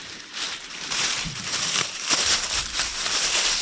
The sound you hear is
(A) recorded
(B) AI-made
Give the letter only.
B